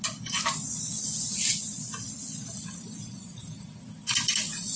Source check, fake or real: real